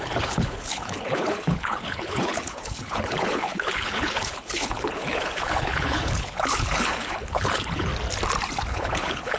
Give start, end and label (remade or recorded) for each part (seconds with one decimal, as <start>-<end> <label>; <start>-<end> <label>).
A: 0.0-7.9 remade; 7.9-8.7 recorded; 8.7-9.4 remade